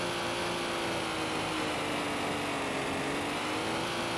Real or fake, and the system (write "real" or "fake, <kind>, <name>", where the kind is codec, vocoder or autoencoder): real